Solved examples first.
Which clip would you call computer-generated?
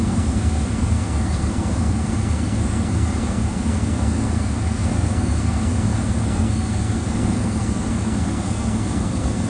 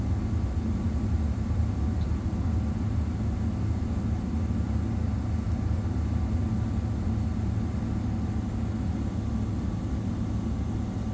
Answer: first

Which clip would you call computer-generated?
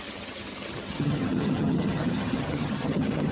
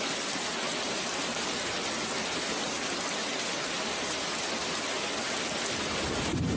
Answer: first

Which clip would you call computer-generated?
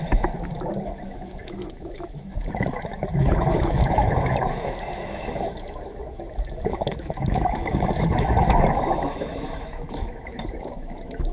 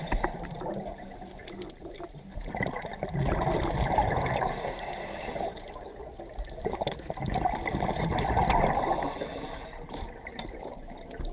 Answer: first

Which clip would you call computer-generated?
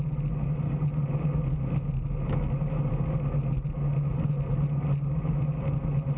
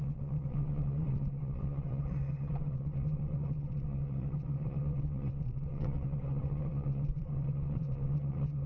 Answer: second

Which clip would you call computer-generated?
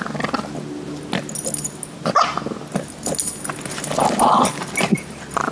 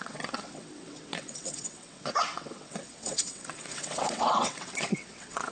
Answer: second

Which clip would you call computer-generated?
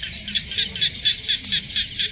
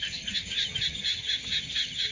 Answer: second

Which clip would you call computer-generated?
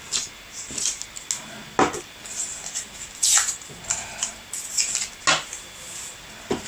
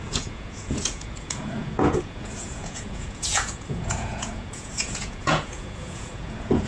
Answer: second